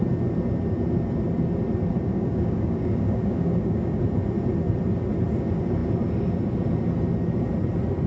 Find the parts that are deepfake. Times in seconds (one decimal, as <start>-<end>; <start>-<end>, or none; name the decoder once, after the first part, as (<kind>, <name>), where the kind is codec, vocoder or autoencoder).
2.1-4.0 (codec, DAC)